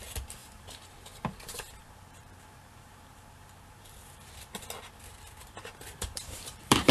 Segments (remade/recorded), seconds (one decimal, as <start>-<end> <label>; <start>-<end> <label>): 0.0-0.4 recorded; 0.4-0.9 remade; 0.9-1.8 recorded; 1.8-4.3 remade; 4.3-5.4 recorded; 5.4-6.9 remade